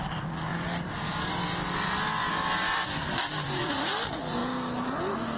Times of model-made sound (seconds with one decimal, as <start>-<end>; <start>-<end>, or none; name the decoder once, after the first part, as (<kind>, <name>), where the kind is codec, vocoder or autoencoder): 0.0-4.4 (vocoder, BigVGAN v2)